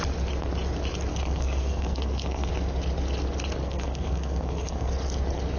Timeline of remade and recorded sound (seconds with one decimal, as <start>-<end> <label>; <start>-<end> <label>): 0.0-1.1 recorded; 1.1-2.5 remade; 2.5-3.6 recorded; 3.6-4.9 remade; 4.9-5.6 recorded